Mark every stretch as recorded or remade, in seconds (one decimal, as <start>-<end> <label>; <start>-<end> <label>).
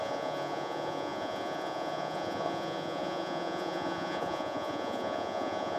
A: 0.0-5.8 remade